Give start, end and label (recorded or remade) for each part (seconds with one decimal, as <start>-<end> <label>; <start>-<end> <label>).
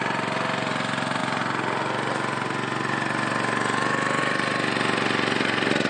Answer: 0.0-5.9 recorded